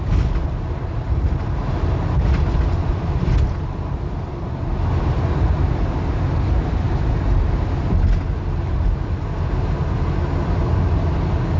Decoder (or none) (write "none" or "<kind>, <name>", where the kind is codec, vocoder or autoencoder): none